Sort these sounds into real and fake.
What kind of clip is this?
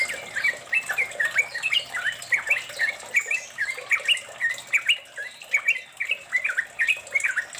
real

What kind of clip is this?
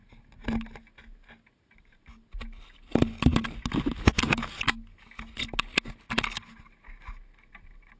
real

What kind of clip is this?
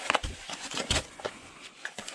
fake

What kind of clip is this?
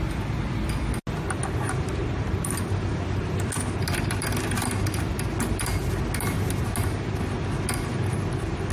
real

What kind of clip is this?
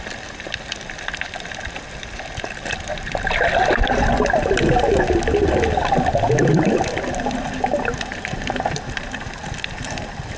real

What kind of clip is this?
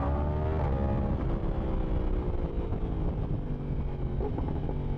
real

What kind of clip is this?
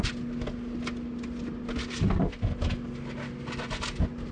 real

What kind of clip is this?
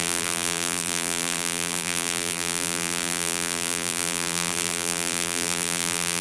fake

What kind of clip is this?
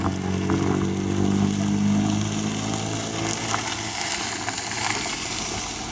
real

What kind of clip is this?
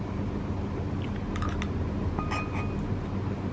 real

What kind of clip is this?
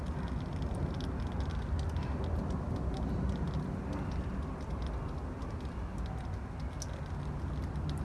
real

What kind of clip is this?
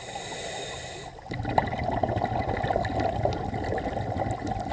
real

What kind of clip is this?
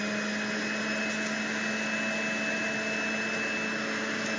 real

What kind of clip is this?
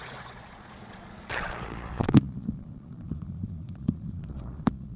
fake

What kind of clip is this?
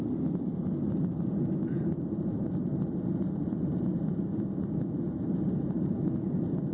real